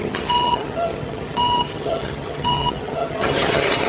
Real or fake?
fake